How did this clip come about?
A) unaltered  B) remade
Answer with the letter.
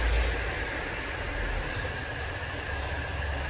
A